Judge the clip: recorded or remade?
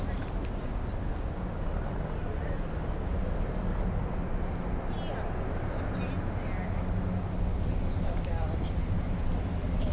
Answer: recorded